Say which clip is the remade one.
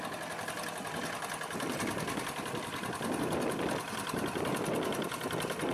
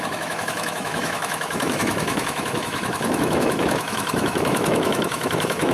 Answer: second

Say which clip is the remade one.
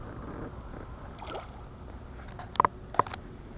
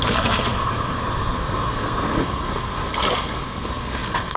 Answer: second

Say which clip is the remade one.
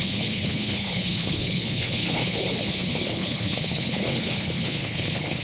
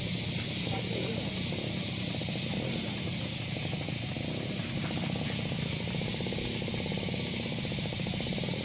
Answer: first